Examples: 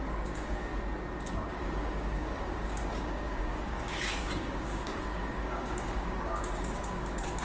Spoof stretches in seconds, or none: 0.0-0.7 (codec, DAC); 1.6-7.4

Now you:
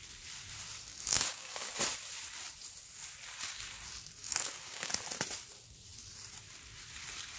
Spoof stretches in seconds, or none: 0.9-1.7 (codec, DAC); 4.2-4.9